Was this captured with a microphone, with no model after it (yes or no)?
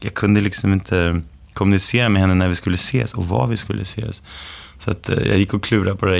yes